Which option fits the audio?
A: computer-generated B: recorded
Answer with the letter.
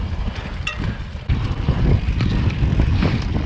B